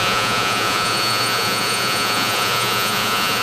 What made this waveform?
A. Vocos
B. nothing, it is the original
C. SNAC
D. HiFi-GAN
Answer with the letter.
A